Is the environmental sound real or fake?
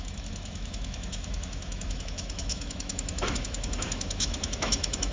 fake